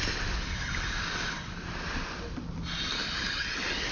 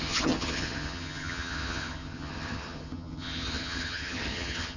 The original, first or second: first